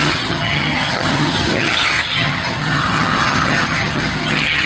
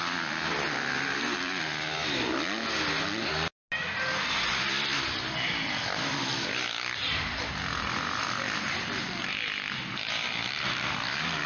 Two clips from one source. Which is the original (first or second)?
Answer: second